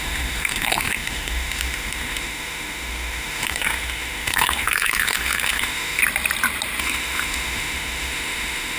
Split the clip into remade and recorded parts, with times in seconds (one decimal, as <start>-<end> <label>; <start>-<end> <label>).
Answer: 0.0-6.0 remade; 6.0-6.8 recorded; 6.8-8.8 remade